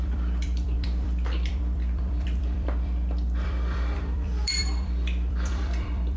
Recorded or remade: remade